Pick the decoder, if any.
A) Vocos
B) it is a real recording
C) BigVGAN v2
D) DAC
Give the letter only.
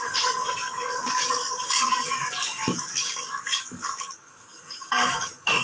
D